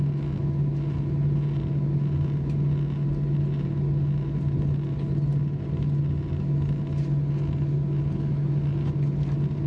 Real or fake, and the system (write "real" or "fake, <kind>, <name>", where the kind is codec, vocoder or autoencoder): real